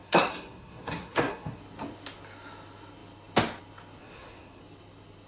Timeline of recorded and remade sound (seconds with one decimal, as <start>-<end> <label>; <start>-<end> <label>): 0.0-1.6 remade; 1.6-4.0 recorded; 4.0-4.6 remade; 4.6-5.3 recorded